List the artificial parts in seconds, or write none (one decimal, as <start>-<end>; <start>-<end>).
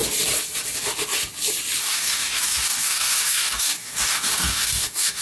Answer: 1.8-5.2